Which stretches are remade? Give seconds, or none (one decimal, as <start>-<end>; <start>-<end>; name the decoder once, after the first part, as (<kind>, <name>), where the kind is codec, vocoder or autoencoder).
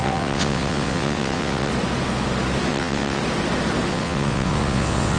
0.0-1.7 (vocoder, WaveNeXt); 2.7-3.2; 3.9-5.2